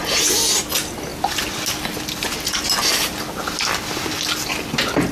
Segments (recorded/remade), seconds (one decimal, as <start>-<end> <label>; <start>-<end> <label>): 0.0-5.1 recorded